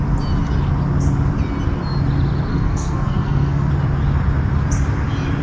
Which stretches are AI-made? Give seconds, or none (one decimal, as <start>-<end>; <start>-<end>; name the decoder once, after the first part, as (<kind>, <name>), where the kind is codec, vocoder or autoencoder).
2.5-3.7 (codec, SNAC)